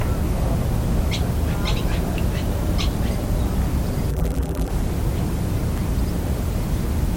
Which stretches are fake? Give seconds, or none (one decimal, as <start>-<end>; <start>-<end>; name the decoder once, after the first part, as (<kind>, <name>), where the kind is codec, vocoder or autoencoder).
4.1-4.7 (vocoder, BigVGAN v2)